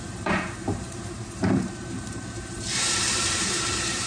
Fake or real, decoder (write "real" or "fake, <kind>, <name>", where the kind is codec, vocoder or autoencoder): fake, vocoder, BigVGAN v2